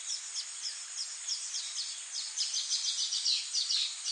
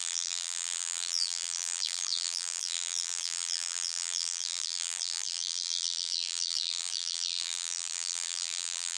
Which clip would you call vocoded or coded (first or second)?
second